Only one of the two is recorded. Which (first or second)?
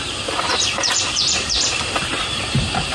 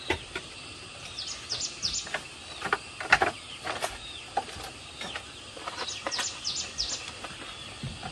second